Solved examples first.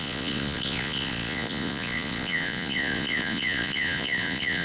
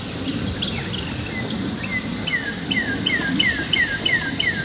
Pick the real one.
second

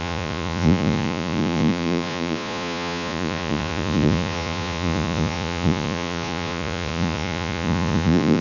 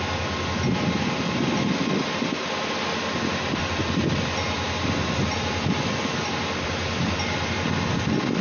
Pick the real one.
second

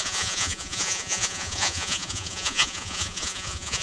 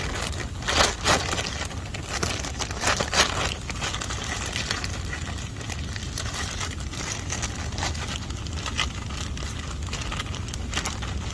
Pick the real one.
second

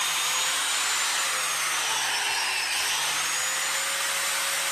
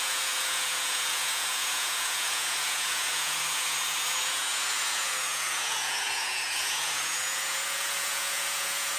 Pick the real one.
first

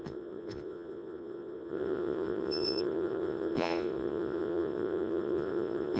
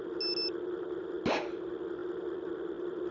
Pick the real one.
second